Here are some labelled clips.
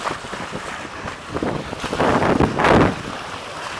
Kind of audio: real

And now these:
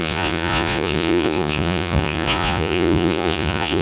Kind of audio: fake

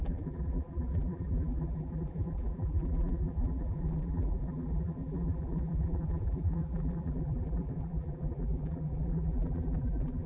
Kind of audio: fake